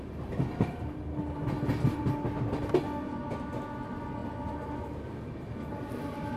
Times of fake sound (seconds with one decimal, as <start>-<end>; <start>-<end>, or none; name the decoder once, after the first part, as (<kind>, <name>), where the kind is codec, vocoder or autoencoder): none